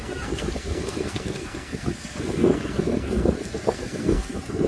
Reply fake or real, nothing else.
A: fake